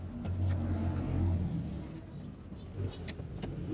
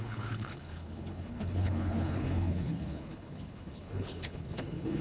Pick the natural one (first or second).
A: first